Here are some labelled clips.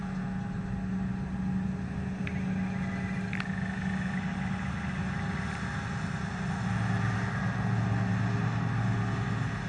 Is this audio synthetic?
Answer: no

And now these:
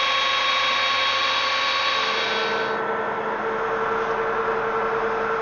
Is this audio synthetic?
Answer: no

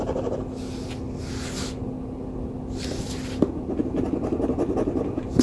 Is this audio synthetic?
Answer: no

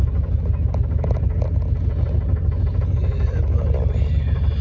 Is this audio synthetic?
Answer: no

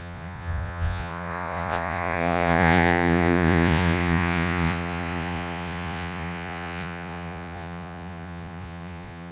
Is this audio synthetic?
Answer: yes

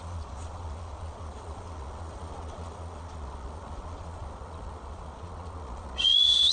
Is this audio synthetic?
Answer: yes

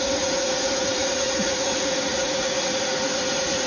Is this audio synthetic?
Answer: yes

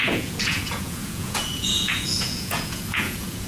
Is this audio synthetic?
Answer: yes